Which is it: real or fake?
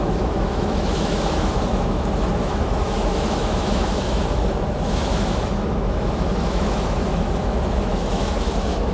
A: fake